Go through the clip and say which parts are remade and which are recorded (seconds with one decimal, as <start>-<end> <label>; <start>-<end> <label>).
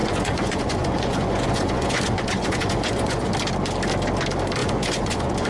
0.0-3.3 remade; 3.3-4.6 recorded; 4.6-5.5 remade